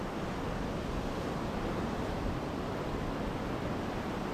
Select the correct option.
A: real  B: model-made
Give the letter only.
A